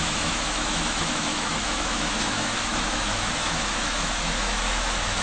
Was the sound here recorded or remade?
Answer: remade